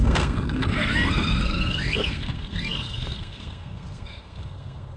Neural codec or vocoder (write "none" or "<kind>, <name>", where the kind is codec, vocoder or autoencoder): codec, SNAC